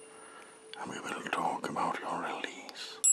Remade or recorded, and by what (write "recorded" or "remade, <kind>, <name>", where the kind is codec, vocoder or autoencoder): recorded